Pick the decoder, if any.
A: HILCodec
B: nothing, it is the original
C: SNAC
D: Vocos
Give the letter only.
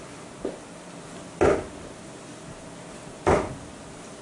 B